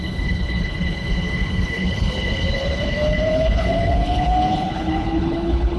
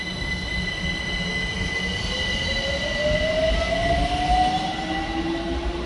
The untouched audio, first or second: second